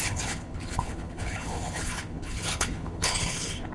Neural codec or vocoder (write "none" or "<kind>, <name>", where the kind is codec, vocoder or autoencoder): codec, HILCodec